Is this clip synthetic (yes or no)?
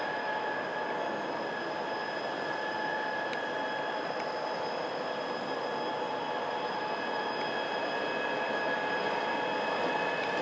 no